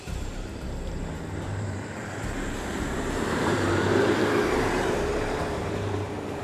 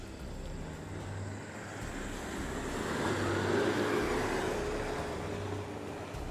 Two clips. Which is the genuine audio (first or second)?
second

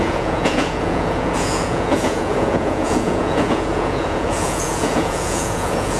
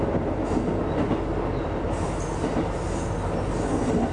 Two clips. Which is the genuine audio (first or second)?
second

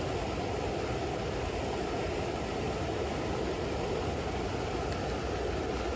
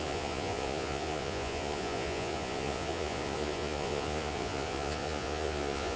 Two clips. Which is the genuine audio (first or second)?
first